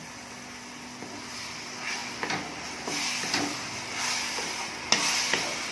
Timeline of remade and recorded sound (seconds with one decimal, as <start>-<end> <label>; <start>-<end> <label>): 0.0-5.7 recorded